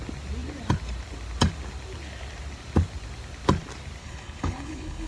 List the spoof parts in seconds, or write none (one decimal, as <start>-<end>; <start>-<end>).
4.0-5.1